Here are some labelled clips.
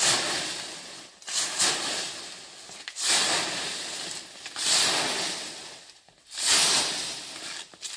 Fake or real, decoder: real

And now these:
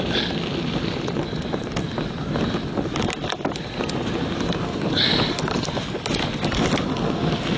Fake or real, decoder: real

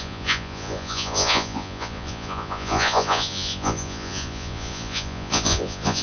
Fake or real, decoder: fake, vocoder, Vocos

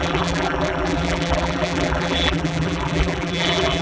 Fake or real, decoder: fake, vocoder, BigVGAN v2